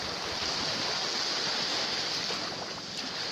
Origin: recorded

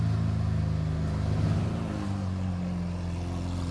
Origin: recorded